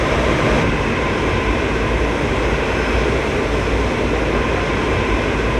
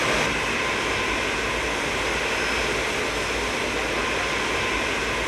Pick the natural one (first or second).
second